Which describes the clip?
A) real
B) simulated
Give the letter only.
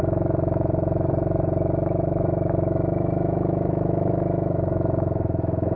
B